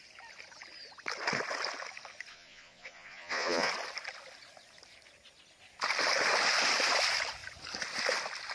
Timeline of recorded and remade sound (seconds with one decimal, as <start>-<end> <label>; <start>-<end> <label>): 0.0-2.3 recorded; 2.3-3.7 remade; 3.7-8.5 recorded